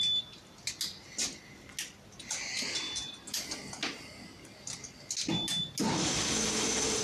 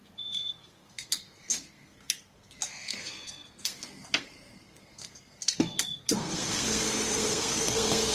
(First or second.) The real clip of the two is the first